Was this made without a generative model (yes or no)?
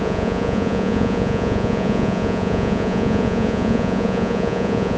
no